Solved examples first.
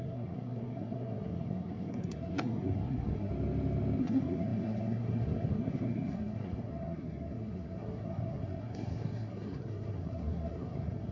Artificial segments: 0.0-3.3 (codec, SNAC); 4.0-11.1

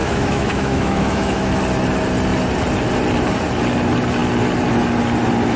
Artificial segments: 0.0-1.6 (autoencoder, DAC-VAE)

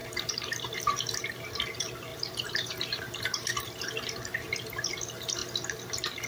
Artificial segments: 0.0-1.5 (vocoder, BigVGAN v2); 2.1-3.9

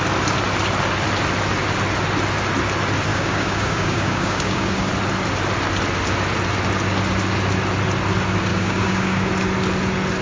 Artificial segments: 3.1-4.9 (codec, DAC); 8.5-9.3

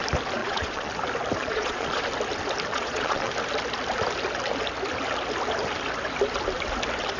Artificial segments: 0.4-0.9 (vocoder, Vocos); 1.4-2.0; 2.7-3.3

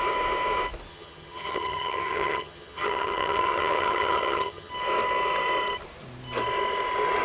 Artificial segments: 0.9-4.7 (vocoder, HiFi-GAN)

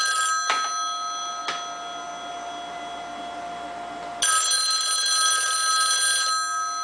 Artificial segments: none

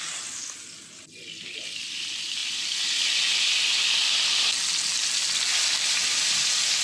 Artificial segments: none